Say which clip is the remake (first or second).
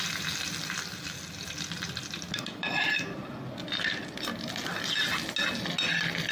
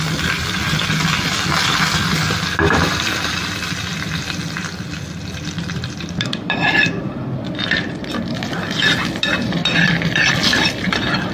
second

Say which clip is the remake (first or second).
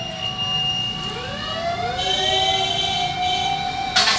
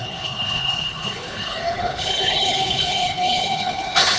second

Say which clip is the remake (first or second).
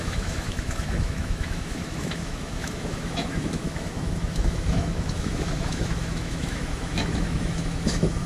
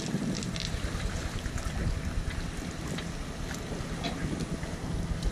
first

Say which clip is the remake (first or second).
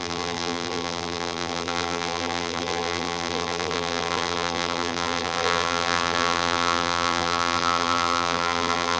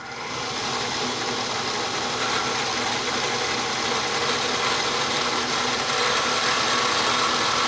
first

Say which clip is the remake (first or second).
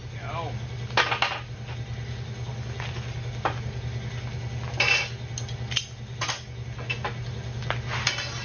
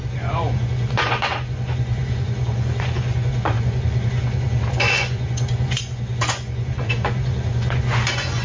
second